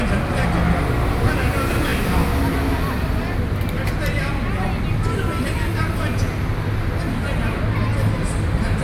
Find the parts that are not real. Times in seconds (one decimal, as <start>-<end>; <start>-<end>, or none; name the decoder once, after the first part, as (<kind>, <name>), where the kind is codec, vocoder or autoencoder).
none

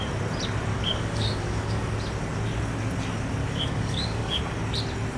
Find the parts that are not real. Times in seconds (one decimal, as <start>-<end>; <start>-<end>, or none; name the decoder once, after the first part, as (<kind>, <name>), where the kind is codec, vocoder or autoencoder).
0.7-1.9 (codec, DAC); 3.4-4.4

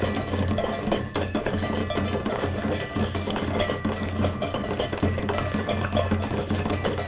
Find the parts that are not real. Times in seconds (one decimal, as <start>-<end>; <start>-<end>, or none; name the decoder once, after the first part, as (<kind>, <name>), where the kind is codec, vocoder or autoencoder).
0.0-1.8 (codec, DAC); 2.3-7.1